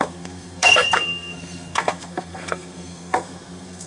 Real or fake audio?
fake